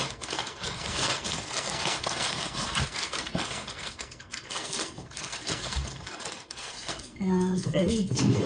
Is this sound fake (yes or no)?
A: yes